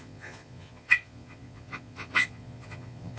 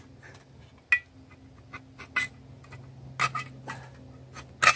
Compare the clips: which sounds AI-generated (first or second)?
first